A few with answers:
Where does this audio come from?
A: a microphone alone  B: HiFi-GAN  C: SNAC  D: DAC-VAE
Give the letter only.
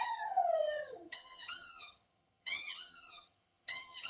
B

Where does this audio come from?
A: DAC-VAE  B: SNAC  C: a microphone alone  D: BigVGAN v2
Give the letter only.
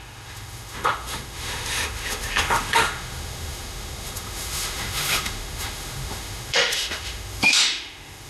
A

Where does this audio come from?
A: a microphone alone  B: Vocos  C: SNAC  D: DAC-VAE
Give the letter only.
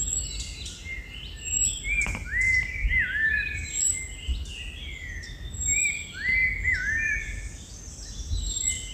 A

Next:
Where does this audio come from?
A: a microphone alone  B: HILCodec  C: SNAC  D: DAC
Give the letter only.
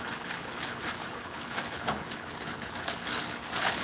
B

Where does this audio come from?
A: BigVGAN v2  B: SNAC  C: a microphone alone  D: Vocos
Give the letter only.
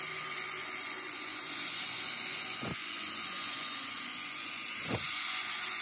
D